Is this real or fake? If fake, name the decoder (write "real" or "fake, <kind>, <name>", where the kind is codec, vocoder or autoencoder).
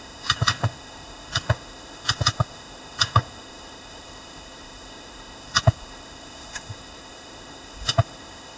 fake, autoencoder, DAC-VAE